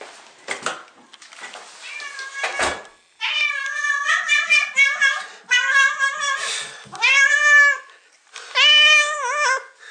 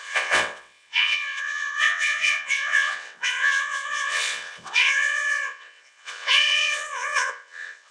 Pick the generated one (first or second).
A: second